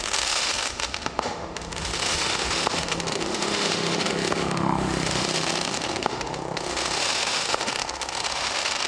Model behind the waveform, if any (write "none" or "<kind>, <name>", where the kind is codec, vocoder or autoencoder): autoencoder, DAC-VAE